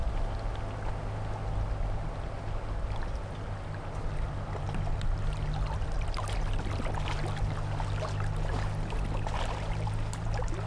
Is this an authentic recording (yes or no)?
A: yes